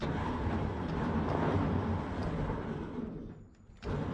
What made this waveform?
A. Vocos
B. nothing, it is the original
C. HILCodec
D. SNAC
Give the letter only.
B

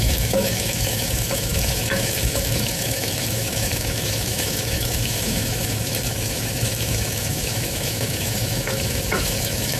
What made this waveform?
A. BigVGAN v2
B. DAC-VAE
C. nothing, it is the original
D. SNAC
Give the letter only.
B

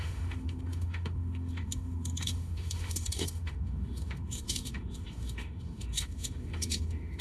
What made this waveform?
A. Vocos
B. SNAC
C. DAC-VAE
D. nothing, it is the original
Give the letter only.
C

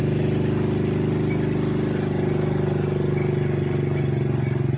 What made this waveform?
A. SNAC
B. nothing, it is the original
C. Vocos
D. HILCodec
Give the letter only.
B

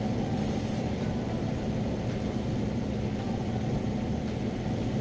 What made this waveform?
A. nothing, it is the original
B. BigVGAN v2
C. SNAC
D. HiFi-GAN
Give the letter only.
A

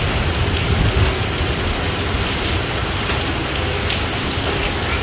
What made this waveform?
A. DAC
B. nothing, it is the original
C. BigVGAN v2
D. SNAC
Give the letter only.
B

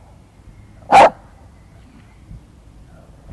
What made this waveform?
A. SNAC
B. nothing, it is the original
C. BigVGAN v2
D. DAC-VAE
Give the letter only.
B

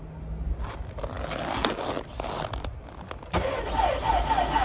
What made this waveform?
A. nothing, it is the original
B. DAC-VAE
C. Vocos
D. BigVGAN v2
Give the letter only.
A